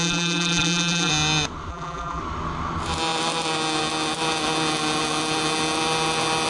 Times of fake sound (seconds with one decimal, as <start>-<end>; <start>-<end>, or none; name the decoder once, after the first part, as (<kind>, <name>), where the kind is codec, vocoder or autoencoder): 0.0-1.1 (vocoder, BigVGAN v2); 1.7-2.2